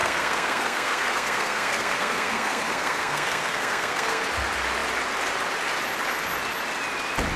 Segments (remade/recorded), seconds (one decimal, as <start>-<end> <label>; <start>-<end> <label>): 0.0-4.2 remade; 4.2-7.4 recorded

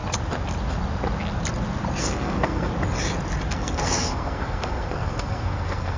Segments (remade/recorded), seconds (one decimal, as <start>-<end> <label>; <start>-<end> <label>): 0.0-2.0 recorded; 2.0-2.7 remade; 2.7-3.5 recorded; 3.5-6.0 remade

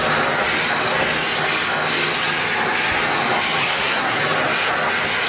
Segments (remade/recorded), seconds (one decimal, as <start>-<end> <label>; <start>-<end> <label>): 0.0-3.6 recorded; 3.6-4.2 remade; 4.2-5.3 recorded

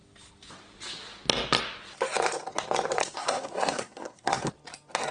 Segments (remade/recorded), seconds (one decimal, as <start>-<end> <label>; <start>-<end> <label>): 0.0-3.0 recorded; 3.0-4.5 remade; 4.5-5.1 recorded

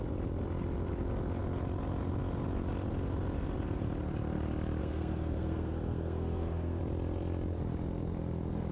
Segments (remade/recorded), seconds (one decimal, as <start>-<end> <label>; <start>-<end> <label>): 0.0-4.8 recorded; 4.8-6.8 remade; 6.8-8.7 recorded

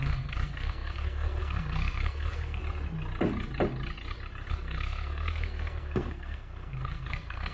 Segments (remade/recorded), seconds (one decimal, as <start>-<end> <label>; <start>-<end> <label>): 0.0-2.6 remade; 2.6-4.5 recorded; 4.5-7.5 remade